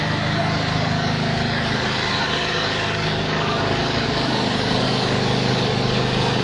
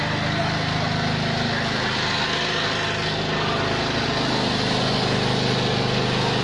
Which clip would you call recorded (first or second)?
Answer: second